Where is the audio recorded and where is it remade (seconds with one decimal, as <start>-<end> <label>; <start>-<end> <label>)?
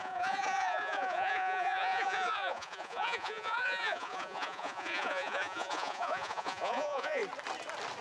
0.0-7.2 remade; 7.2-8.0 recorded